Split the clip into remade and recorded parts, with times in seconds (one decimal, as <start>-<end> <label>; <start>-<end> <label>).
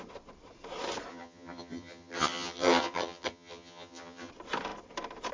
0.0-1.1 recorded; 1.1-4.3 remade; 4.3-5.3 recorded